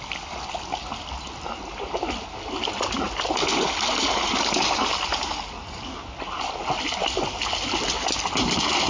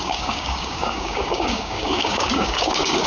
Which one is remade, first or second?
second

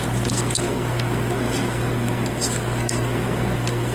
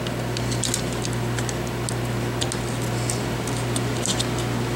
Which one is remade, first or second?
first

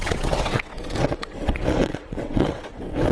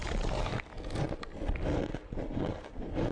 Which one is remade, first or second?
first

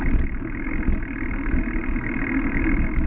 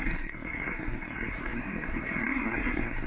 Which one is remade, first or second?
second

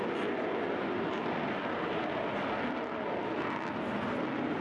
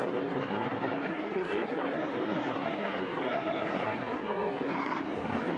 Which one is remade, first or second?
second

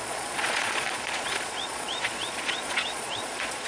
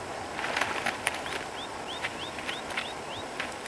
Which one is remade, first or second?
first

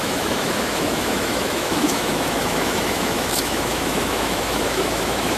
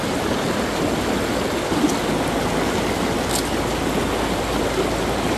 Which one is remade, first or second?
first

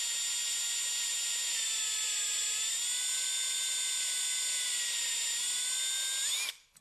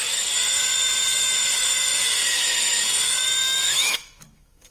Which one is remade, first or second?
second